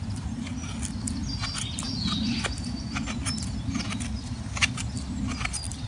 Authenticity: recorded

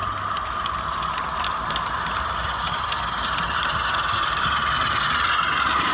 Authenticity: recorded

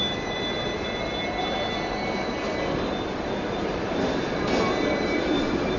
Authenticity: recorded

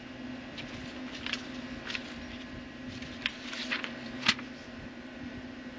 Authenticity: recorded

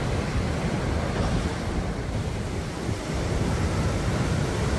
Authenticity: recorded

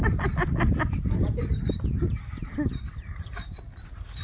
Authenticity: recorded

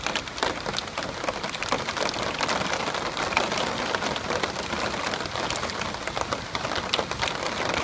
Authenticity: recorded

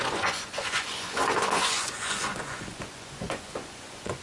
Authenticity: remade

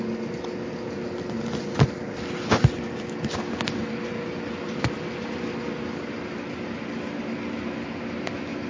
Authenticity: recorded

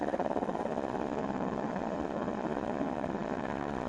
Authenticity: remade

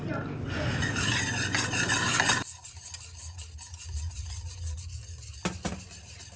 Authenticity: recorded